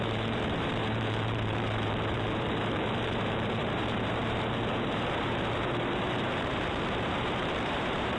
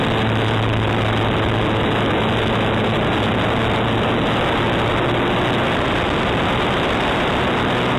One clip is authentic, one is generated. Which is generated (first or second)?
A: first